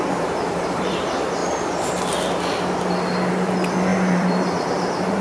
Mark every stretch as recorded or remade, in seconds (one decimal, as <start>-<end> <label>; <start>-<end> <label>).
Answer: 0.0-1.4 remade; 1.4-3.3 recorded; 3.3-5.2 remade